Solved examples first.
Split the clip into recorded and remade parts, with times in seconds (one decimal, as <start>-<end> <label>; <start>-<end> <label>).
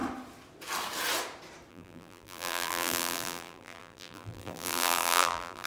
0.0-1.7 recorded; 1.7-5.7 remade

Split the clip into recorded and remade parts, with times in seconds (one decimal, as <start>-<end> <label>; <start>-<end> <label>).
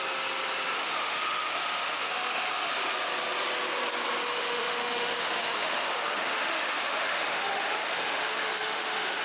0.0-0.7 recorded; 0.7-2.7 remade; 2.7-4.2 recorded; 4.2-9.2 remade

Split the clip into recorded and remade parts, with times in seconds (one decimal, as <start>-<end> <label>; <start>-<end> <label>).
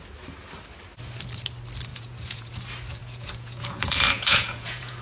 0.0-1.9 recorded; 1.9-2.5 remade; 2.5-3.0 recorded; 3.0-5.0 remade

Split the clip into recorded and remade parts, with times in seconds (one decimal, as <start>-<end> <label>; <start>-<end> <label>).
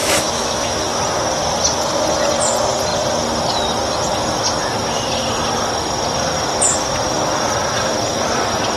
0.0-1.0 remade; 1.0-8.8 recorded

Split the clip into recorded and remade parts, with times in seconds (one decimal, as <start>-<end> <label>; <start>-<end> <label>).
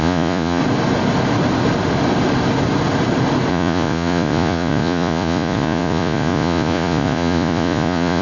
0.0-0.6 remade; 0.6-3.5 recorded; 3.5-8.2 remade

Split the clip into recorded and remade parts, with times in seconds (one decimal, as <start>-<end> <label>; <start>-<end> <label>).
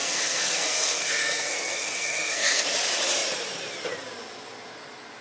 0.0-2.6 remade; 2.6-5.2 recorded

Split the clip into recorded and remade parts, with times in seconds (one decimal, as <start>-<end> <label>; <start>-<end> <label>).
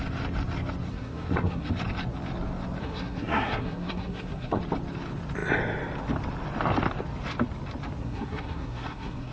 0.0-0.9 recorded; 0.9-1.7 remade; 1.7-2.8 recorded; 2.8-4.6 remade; 4.6-8.0 recorded; 8.0-9.3 remade